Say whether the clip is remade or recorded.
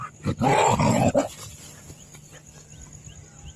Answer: recorded